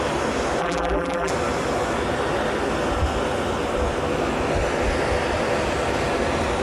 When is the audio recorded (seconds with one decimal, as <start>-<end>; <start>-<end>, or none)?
0.0-0.6; 1.3-6.6